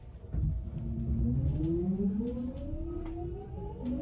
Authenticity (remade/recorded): recorded